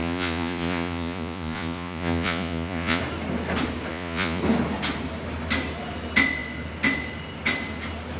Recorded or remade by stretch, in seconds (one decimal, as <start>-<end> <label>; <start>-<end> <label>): 0.0-3.0 remade; 3.0-3.9 recorded; 3.9-4.4 remade; 4.4-8.2 recorded